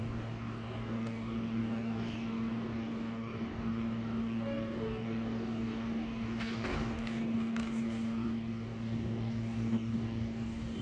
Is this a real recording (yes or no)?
no